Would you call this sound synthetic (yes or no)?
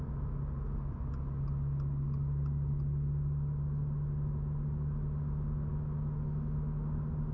no